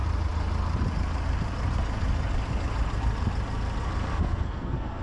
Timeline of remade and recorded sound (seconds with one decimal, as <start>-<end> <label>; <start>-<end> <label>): 0.0-4.1 recorded; 4.1-5.0 remade